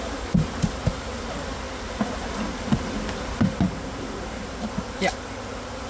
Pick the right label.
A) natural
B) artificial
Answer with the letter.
A